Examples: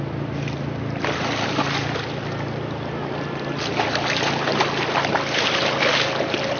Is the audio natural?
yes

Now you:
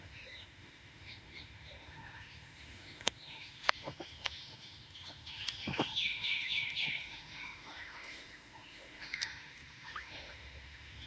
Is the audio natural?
no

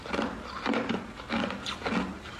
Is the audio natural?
yes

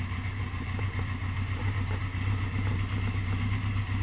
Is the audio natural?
yes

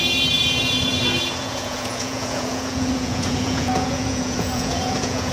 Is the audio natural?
no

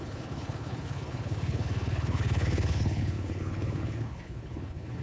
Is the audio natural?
no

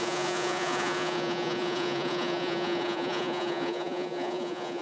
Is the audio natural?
no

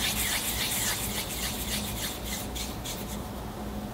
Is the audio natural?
yes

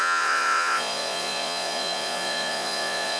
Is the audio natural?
no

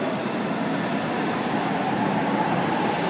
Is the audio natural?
no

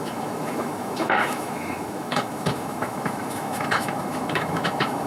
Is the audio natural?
no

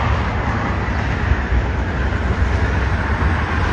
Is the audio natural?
yes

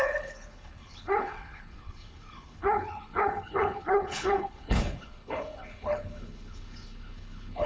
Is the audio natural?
no